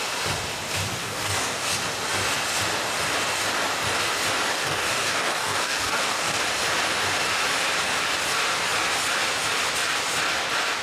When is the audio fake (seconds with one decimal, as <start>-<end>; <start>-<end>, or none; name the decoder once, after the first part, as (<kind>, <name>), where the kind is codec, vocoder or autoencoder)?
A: 1.0-1.7 (codec, DAC); 4.5-6.4